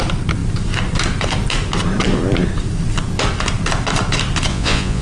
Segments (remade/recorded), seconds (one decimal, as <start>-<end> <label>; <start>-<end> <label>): 0.0-4.5 recorded; 4.5-5.0 remade